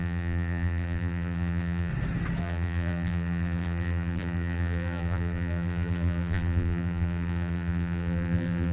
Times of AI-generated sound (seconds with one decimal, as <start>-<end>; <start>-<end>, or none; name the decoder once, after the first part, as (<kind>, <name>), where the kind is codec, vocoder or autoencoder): 0.0-1.9 (vocoder, BigVGAN v2); 2.4-8.7